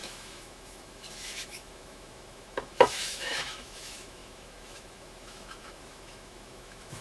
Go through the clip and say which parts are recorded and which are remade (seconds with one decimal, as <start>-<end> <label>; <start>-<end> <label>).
0.0-7.0 remade